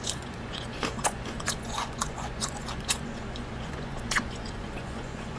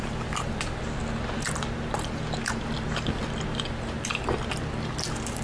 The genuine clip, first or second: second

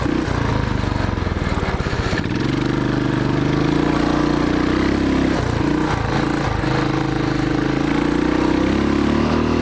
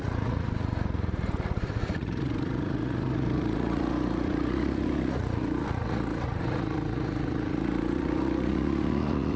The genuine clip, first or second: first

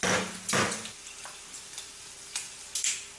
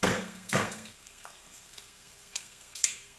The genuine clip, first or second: first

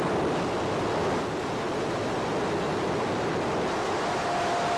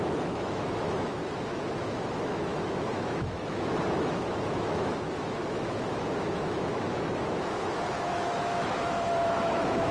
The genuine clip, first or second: first